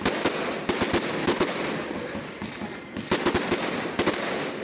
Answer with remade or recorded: recorded